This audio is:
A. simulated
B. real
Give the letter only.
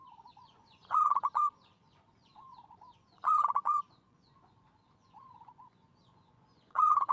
A